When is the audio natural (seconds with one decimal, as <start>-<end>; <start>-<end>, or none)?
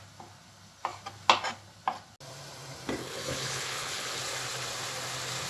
0.0-3.0; 4.2-5.5